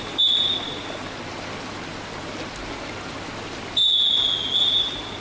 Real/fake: real